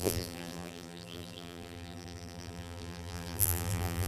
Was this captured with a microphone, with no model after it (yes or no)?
no